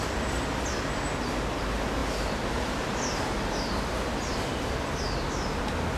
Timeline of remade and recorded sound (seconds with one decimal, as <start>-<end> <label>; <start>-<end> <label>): 0.0-2.0 recorded; 2.0-5.6 remade; 5.6-6.0 recorded